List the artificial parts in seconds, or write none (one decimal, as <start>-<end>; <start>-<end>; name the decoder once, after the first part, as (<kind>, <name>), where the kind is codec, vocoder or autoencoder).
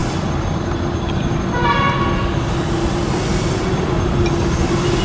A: none